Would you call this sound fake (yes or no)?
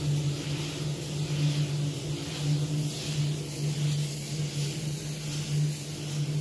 no